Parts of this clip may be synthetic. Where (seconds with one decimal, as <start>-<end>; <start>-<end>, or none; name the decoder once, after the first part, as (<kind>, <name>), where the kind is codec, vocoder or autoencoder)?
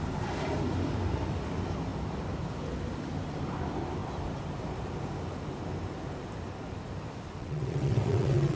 7.4-8.6 (vocoder, WaveNeXt)